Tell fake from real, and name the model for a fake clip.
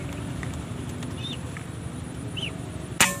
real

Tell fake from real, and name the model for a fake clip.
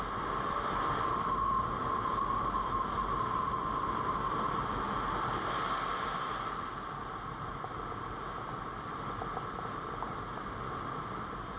real